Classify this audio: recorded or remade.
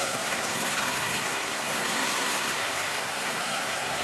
remade